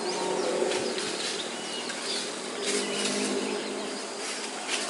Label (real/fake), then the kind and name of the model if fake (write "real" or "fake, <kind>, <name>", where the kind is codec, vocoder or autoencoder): real